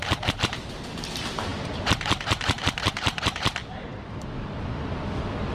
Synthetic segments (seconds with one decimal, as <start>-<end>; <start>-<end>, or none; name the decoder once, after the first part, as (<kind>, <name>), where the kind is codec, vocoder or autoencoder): 0.0-3.9 (vocoder, BigVGAN v2)